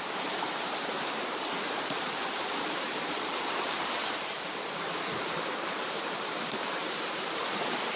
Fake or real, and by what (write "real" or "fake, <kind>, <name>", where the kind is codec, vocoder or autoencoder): fake, vocoder, BigVGAN v2